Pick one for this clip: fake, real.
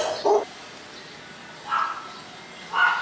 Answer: real